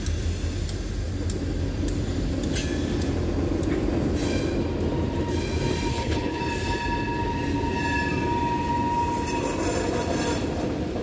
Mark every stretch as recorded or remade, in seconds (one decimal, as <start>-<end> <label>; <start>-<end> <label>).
0.0-5.9 recorded; 5.9-6.4 remade; 6.4-11.0 recorded